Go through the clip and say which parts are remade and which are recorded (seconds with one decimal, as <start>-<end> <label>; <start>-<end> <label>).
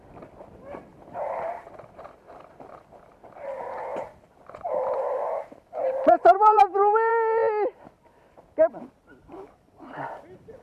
0.0-0.9 recorded; 0.9-3.1 remade; 3.1-3.9 recorded; 3.9-6.6 remade; 6.6-10.6 recorded